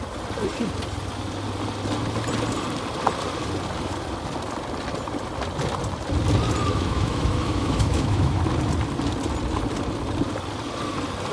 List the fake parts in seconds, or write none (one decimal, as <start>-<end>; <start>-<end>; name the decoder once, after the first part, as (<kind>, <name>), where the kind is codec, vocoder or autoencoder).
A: 6.7-8.4 (autoencoder, DAC-VAE)